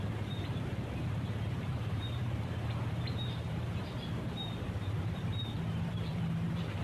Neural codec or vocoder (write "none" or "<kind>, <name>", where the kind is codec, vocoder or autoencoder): vocoder, BigVGAN v2